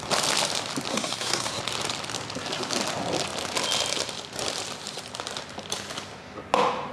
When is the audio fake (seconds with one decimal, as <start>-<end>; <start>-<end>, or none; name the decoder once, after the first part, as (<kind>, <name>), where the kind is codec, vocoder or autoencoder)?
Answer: 0.9-1.6 (codec, SNAC)